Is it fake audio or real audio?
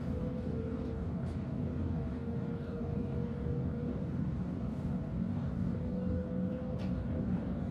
fake